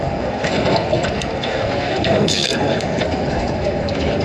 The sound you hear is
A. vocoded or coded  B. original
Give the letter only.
A